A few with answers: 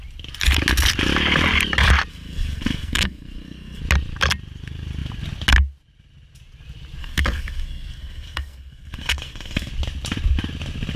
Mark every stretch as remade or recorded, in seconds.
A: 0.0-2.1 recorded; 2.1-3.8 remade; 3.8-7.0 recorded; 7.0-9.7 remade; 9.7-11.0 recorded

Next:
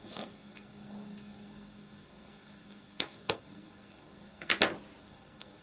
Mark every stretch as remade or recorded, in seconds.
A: 0.0-4.5 remade; 4.5-5.0 recorded; 5.0-5.6 remade

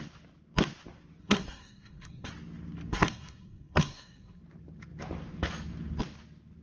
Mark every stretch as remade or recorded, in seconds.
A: 0.0-1.2 recorded; 1.2-2.3 remade; 2.3-2.9 recorded; 2.9-4.4 remade; 4.4-6.6 recorded

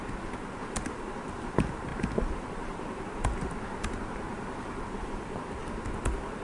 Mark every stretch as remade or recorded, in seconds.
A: 0.0-6.4 recorded

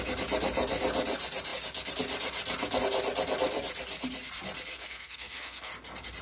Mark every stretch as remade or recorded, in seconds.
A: 0.0-4.7 recorded; 4.7-5.7 remade; 5.7-6.2 recorded

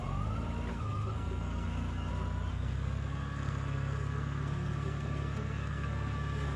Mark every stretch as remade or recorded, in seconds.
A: 0.0-0.7 recorded; 0.7-2.1 remade; 2.1-2.5 recorded; 2.5-6.6 remade